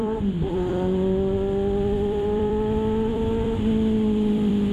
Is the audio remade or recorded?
remade